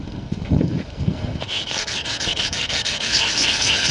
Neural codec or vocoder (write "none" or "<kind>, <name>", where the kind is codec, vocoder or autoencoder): codec, SNAC